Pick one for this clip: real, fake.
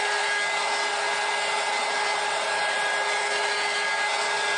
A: real